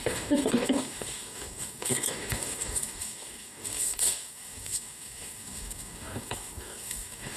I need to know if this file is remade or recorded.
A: remade